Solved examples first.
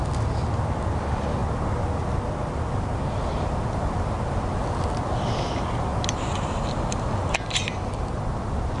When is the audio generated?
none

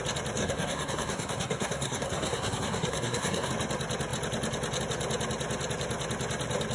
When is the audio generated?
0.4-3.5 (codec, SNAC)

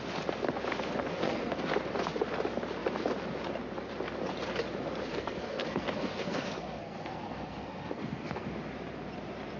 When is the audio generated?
1.1-1.7 (codec, SNAC); 5.1-8.5

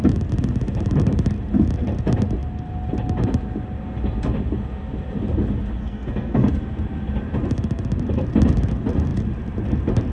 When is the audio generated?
5.8-6.5 (codec, SNAC)

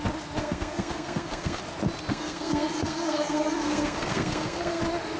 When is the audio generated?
0.4-1.6 (codec, SNAC); 2.1-4.8

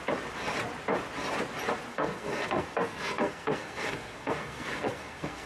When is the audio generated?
1.9-5.5 (codec, SNAC)

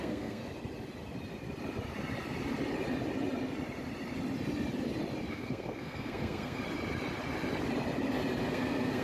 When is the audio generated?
0.0-0.4 (codec, SNAC); 5.3-6.6; 8.5-9.0